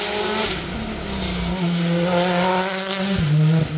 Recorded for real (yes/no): yes